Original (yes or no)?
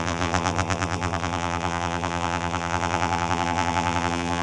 no